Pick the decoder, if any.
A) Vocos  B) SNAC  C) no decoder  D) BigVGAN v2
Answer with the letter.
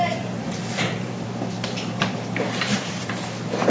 D